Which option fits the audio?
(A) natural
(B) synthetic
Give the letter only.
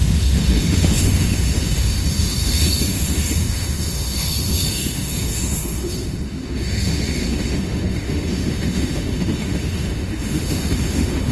B